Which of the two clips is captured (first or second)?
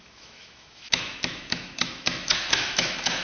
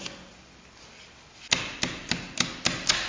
second